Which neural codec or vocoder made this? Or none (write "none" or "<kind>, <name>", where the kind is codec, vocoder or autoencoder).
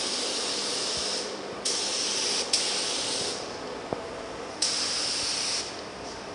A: none